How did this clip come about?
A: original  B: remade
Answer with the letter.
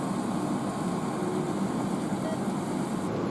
A